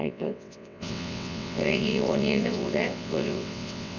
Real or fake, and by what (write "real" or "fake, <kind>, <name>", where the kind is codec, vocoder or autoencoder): fake, vocoder, WaveNeXt